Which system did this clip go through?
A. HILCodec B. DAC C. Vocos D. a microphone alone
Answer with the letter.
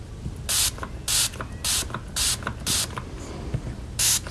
D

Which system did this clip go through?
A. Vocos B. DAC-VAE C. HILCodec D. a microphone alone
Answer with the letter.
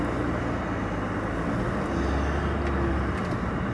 D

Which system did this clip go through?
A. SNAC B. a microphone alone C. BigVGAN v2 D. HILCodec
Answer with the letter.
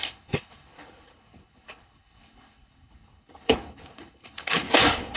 D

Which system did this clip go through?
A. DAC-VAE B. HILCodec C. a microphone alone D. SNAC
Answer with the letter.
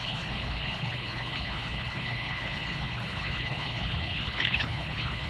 B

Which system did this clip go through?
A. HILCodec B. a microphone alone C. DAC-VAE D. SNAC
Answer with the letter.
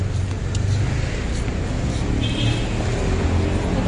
B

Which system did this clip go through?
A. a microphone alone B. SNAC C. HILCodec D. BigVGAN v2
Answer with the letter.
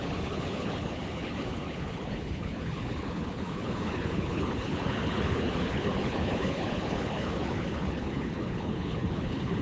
C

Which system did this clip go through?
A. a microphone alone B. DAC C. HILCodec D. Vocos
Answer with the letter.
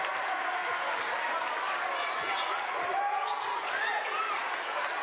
A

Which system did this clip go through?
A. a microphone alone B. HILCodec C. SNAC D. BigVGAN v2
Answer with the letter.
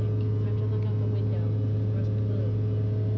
A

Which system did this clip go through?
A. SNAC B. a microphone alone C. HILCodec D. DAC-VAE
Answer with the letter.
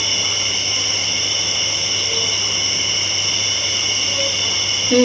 B